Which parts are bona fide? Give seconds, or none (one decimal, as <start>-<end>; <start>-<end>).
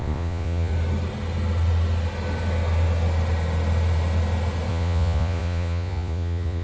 0.7-4.7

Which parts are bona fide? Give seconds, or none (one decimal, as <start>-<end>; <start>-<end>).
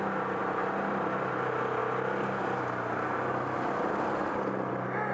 0.0-5.1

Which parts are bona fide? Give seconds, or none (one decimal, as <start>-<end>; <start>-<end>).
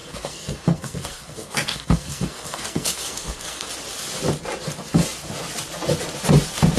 3.7-6.8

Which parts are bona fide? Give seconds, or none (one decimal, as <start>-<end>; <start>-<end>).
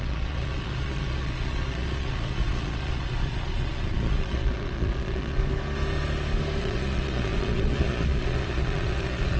5.4-6.6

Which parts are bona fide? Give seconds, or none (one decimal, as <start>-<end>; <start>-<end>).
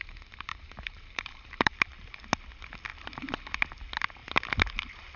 0.0-0.5; 2.2-5.2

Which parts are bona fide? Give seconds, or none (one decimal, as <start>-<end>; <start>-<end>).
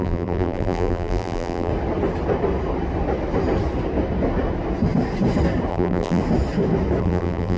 1.7-5.7; 6.2-7.0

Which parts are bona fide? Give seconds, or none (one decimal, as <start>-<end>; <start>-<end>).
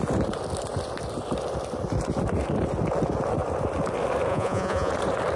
0.0-4.3; 4.9-5.4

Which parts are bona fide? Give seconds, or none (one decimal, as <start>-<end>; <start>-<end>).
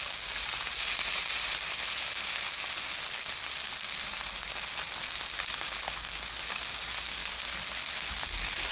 0.0-8.7